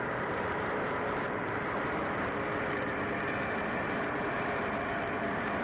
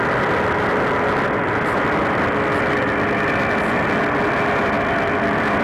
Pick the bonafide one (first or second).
second